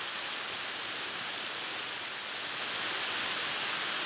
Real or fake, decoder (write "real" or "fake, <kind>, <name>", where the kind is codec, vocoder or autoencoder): real